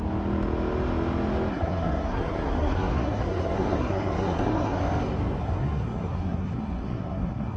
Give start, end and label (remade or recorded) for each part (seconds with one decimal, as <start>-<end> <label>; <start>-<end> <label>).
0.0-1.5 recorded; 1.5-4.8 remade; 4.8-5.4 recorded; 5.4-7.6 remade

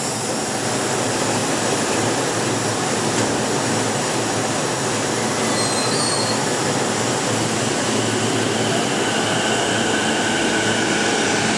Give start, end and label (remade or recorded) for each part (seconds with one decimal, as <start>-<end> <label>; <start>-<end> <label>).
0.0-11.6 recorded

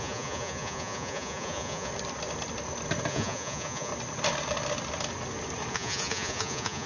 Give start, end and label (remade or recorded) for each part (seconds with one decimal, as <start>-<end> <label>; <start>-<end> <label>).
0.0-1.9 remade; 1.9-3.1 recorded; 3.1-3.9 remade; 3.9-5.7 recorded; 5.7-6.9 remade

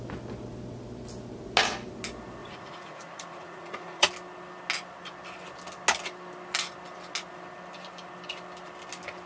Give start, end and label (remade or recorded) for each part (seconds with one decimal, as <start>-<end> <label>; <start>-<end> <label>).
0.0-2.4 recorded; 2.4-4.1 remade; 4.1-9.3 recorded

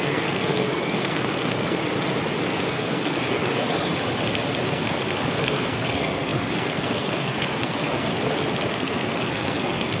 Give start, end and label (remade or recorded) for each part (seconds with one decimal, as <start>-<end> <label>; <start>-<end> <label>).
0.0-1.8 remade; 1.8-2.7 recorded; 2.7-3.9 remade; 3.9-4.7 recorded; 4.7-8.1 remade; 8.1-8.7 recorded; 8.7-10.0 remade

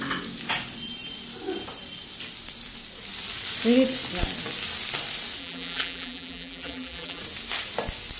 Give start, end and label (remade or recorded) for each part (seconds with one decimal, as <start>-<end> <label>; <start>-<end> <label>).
0.0-5.4 recorded; 5.4-7.2 remade; 7.2-8.2 recorded

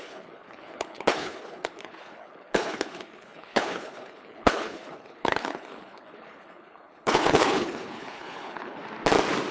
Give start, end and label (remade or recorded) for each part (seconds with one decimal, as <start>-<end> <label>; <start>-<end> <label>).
0.0-8.8 remade; 8.8-9.5 recorded

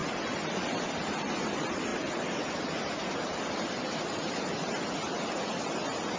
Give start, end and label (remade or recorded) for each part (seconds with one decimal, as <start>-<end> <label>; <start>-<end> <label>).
0.0-6.2 recorded